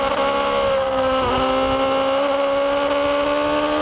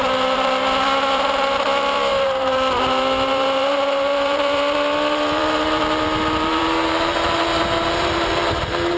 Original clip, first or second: first